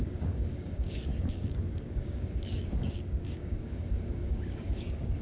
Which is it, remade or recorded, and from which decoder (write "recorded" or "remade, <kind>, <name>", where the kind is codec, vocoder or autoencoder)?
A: remade, codec, DAC